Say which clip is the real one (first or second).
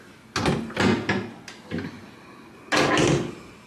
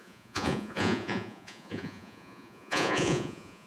first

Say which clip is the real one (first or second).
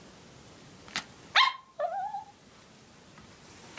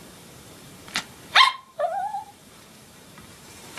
first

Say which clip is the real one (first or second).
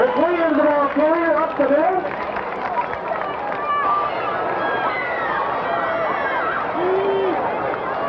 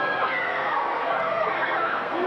first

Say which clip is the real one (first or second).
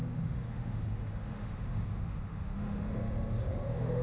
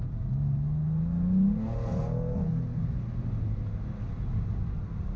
second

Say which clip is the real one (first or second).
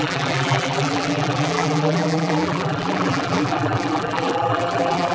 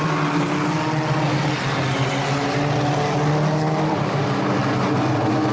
second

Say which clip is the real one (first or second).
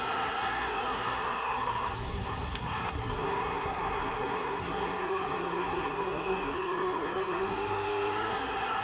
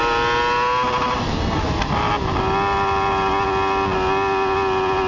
second